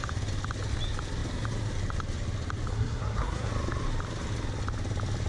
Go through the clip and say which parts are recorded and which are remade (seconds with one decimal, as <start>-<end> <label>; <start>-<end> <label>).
0.0-2.7 recorded; 2.7-3.5 remade; 3.5-5.3 recorded